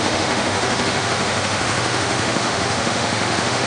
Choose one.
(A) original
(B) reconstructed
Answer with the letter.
B